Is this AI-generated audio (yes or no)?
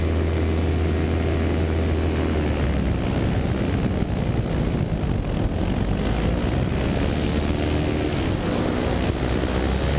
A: no